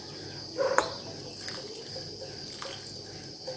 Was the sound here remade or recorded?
recorded